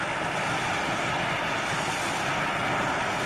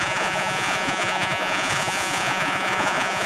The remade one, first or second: second